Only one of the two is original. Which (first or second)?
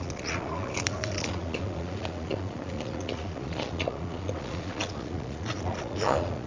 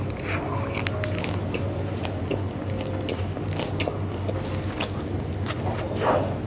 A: second